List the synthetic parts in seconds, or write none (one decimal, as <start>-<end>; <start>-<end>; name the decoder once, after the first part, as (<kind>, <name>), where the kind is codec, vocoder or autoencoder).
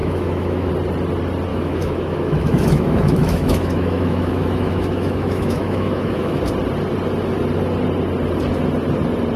0.0-0.7 (autoencoder, DAC-VAE); 1.5-6.4